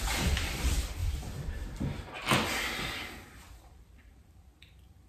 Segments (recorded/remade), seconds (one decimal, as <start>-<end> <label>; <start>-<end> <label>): 0.0-1.0 remade; 1.0-3.3 recorded; 3.3-5.1 remade